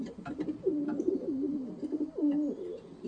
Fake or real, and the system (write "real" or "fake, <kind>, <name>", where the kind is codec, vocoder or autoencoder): real